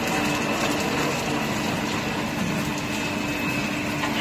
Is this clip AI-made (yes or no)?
no